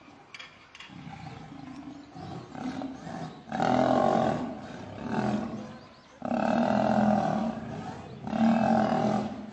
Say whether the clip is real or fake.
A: real